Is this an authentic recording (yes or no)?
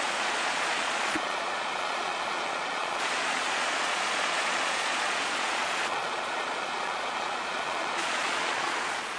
no